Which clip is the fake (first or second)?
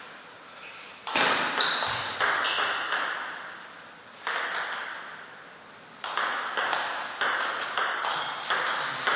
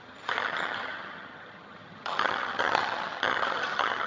second